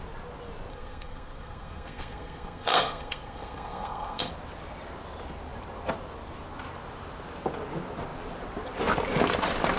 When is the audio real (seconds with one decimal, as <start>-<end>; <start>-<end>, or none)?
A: 0.0-0.7; 4.3-9.8